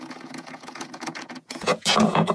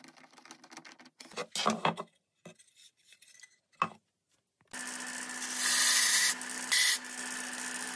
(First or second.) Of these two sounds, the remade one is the first